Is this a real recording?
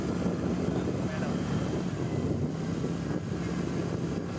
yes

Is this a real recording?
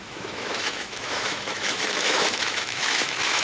no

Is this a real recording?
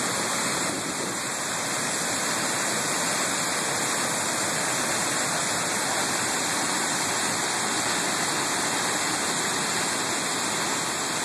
yes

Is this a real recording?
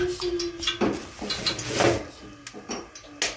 yes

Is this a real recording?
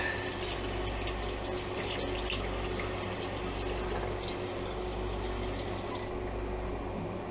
yes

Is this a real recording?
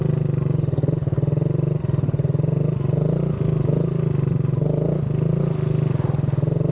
yes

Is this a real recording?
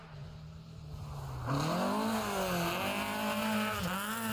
yes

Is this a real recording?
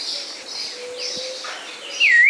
yes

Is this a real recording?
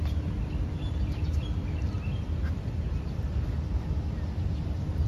yes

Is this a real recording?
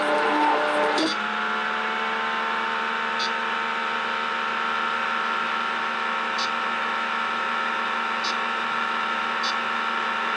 yes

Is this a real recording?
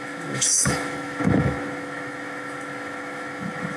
no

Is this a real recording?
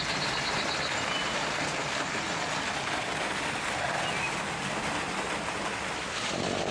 yes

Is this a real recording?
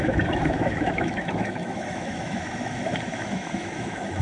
no